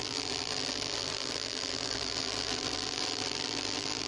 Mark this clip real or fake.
fake